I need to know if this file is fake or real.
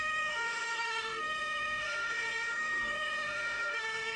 fake